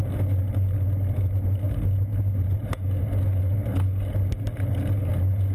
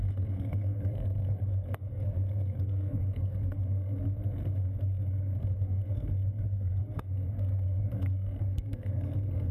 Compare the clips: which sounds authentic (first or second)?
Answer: first